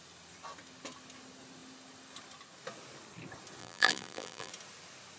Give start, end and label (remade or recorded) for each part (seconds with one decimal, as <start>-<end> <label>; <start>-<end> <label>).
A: 0.0-3.6 recorded; 3.6-4.5 remade; 4.5-5.2 recorded